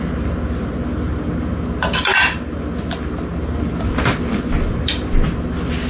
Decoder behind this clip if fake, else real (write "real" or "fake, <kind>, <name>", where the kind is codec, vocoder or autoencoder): real